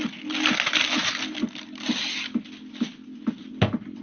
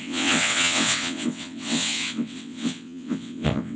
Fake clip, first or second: second